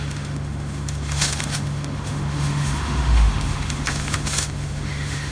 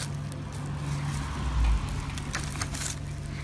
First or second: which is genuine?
second